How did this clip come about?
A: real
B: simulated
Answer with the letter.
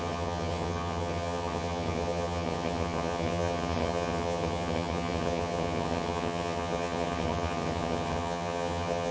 B